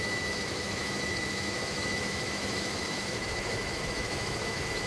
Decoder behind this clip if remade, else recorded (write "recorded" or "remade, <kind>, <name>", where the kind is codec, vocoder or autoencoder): remade, autoencoder, DAC-VAE